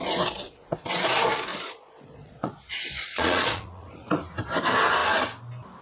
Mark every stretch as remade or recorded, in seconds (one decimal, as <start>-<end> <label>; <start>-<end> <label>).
0.0-1.5 recorded; 1.5-4.1 remade; 4.1-5.8 recorded